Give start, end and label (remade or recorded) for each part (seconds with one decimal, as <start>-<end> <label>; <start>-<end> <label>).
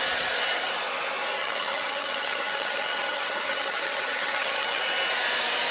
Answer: 0.0-1.4 recorded; 1.4-4.8 remade; 4.8-5.7 recorded